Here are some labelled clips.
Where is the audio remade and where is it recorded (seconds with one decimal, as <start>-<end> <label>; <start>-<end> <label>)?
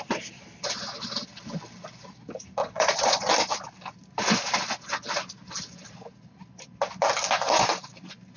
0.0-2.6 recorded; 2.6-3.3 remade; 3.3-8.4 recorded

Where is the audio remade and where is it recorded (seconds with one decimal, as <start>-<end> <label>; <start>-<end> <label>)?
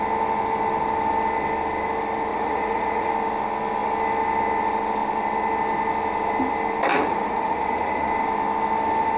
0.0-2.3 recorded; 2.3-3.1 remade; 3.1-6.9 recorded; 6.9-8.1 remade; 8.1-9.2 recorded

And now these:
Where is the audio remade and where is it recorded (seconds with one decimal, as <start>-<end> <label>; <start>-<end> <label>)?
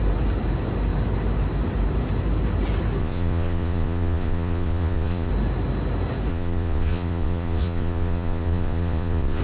0.0-3.0 recorded; 3.0-5.3 remade; 5.3-6.3 recorded; 6.3-9.4 remade